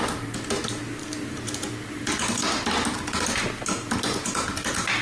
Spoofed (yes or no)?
no